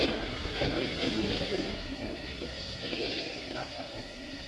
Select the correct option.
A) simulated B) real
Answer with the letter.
A